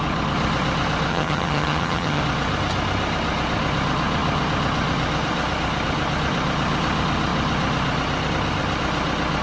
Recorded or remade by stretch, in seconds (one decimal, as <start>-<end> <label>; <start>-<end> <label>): 0.0-1.1 recorded; 1.1-2.2 remade; 2.2-9.4 recorded